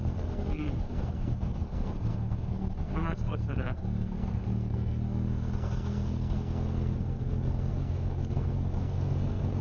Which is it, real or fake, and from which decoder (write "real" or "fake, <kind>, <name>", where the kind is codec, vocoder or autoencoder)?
fake, codec, SNAC